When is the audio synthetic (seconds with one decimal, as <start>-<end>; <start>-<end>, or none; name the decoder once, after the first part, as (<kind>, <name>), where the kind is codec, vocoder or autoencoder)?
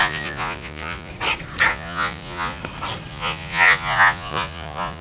0.0-1.1 (vocoder, Vocos); 1.7-2.6; 3.1-5.0